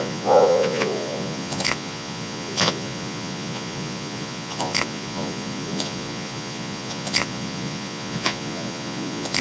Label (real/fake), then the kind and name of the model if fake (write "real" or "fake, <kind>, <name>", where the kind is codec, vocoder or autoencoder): fake, vocoder, Vocos